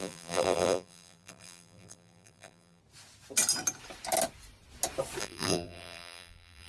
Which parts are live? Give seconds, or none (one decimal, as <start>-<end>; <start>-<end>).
2.8-5.2